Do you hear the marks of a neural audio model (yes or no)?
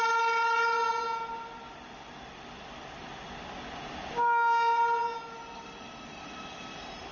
no